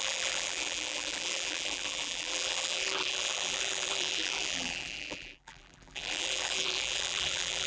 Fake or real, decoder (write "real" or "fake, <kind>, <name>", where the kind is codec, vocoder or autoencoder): fake, vocoder, BigVGAN v2